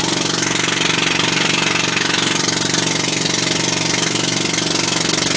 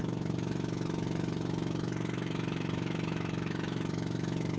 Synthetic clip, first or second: second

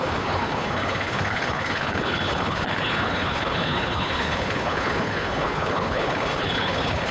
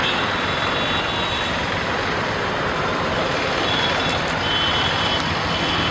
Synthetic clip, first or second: first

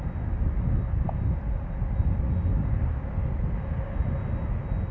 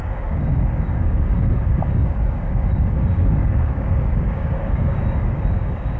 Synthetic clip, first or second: second